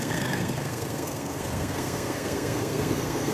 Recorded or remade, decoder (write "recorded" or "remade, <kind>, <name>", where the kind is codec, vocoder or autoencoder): remade, codec, SNAC